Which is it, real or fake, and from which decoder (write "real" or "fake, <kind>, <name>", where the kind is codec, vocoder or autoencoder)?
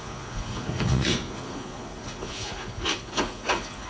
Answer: fake, vocoder, Vocos